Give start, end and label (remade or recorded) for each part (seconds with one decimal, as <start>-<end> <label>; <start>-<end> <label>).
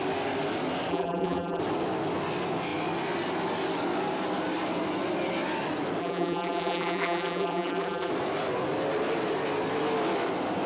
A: 0.0-0.9 recorded; 0.9-1.6 remade; 1.6-6.0 recorded; 6.0-8.1 remade; 8.1-10.7 recorded